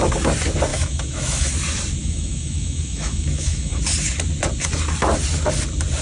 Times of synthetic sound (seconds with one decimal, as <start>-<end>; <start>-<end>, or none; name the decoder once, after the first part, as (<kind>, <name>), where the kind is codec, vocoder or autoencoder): 0.7-1.5 (autoencoder, DAC-VAE); 2.0-3.8